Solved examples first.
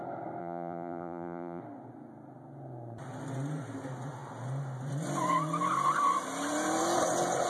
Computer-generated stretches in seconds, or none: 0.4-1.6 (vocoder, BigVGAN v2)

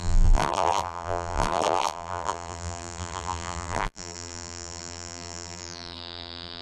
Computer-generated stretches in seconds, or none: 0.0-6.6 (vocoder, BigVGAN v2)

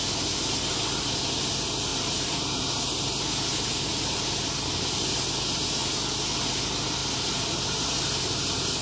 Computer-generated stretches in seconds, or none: 1.9-2.6 (vocoder, BigVGAN v2)